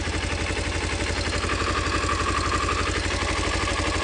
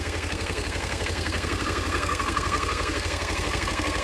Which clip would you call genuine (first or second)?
first